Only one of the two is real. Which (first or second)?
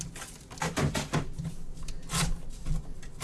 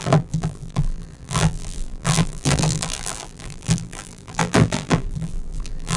first